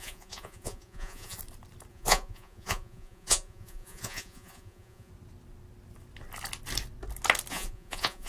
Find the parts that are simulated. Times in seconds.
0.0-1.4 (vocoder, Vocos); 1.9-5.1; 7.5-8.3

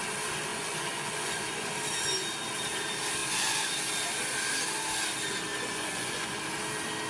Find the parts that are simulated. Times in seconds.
0.5-1.7 (vocoder, Vocos); 3.2-3.7; 5.5-6.4

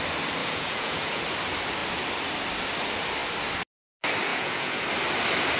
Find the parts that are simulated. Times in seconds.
0.4-1.2 (vocoder, Vocos); 4.3-4.8